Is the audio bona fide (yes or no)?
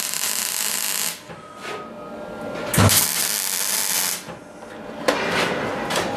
yes